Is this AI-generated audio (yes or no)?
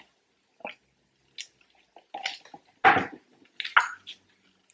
no